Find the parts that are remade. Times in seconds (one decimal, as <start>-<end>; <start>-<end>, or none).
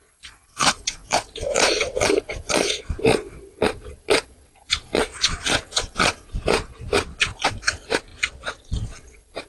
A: 0.0-9.5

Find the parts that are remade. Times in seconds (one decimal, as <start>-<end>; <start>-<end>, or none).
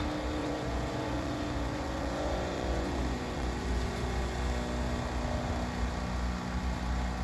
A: 0.4-4.4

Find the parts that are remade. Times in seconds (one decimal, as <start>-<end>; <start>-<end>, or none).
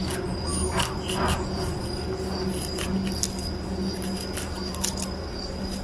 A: none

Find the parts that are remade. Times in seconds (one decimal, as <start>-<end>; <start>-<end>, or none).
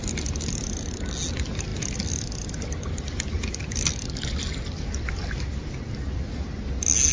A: none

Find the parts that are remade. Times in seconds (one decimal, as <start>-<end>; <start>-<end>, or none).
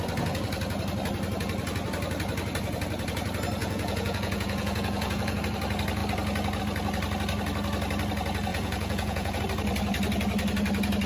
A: 3.6-5.4; 8.5-9.4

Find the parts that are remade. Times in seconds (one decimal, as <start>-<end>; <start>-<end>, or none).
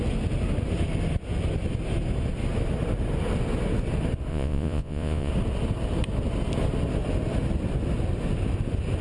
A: 4.3-5.3